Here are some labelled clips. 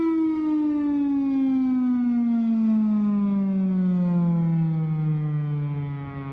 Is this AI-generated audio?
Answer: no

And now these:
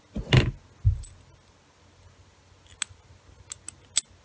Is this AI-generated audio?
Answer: no